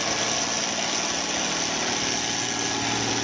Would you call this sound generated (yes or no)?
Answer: no